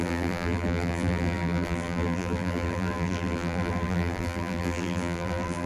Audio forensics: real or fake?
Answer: fake